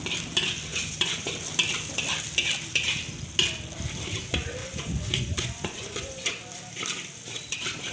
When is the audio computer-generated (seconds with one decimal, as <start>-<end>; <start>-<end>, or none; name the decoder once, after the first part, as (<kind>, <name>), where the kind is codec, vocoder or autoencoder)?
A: 0.7-1.3 (vocoder, Vocos); 4.6-6.2